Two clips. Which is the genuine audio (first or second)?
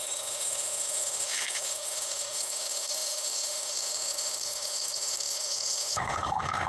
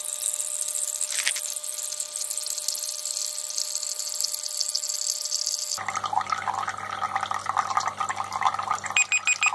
second